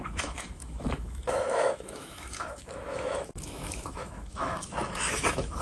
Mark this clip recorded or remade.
remade